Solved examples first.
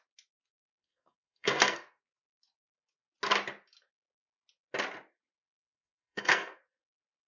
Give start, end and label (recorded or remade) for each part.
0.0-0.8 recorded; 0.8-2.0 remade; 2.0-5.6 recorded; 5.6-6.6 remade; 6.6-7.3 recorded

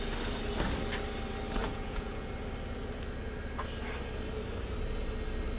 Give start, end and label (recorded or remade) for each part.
0.0-1.6 recorded; 1.6-2.3 remade; 2.3-5.6 recorded

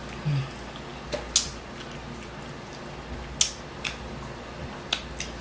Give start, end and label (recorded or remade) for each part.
0.0-5.4 recorded